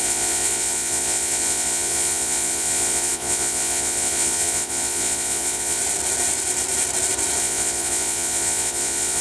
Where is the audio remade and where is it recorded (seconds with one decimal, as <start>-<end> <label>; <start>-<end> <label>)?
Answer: 0.0-5.8 remade; 5.8-7.4 recorded; 7.4-9.2 remade